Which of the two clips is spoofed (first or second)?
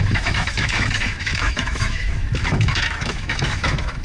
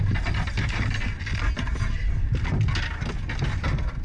first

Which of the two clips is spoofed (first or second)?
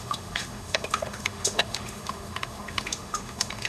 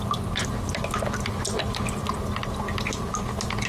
first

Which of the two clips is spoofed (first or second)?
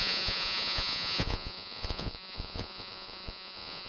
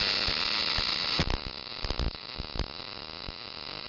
first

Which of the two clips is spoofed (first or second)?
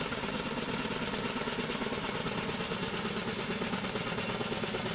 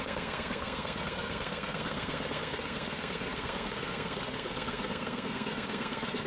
second